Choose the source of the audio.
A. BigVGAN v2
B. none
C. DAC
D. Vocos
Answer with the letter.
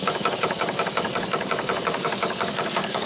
C